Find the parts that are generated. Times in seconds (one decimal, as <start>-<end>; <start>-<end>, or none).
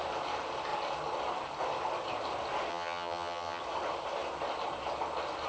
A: 2.7-3.6